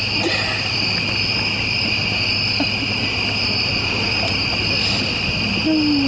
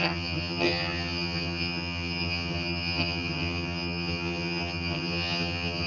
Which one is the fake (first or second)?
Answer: second